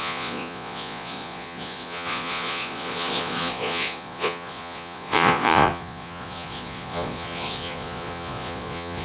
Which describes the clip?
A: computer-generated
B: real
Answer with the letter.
A